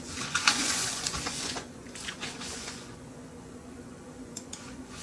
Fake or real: fake